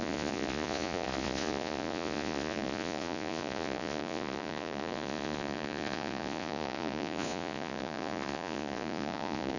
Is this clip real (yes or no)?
no